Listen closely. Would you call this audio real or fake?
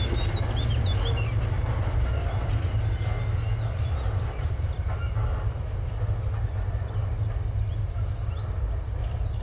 real